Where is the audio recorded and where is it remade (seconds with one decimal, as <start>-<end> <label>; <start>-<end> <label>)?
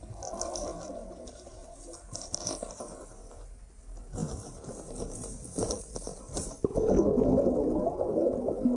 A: 0.0-8.8 recorded